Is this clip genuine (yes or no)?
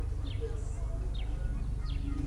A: yes